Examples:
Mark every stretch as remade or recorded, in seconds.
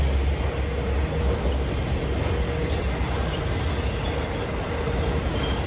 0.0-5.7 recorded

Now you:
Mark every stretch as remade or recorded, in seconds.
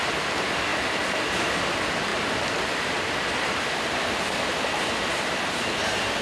0.0-2.1 recorded; 2.1-5.6 remade; 5.6-6.2 recorded